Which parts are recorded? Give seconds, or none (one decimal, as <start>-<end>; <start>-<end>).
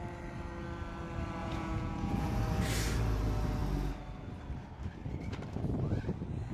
0.0-1.4; 2.4-6.5